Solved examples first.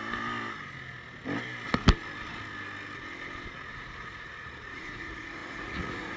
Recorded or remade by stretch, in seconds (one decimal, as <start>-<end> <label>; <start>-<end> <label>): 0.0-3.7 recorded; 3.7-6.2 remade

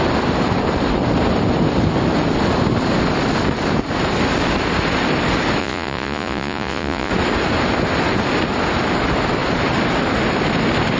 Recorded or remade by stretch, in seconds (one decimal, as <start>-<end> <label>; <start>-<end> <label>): 0.0-5.6 recorded; 5.6-7.1 remade; 7.1-11.0 recorded

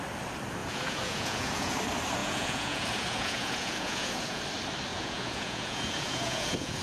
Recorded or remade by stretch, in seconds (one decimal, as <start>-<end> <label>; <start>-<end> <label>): 0.0-0.6 recorded; 0.6-1.7 remade; 1.7-2.2 recorded; 2.2-4.4 remade; 4.4-4.9 recorded; 4.9-6.8 remade

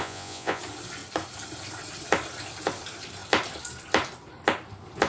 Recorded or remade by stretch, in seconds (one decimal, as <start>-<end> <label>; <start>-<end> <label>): 0.0-0.6 remade; 0.6-5.1 recorded

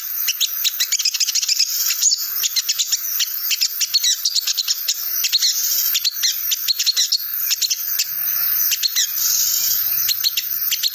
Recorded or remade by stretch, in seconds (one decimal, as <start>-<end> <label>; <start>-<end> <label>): 0.0-10.9 recorded

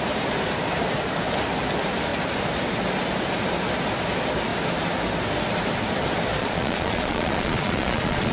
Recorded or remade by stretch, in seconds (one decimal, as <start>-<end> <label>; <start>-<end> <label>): 0.0-6.4 recorded; 6.4-8.3 remade

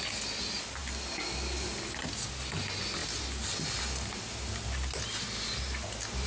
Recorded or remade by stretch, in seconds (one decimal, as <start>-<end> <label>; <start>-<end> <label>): 0.0-6.3 recorded